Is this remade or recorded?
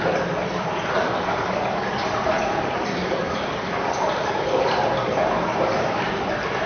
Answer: remade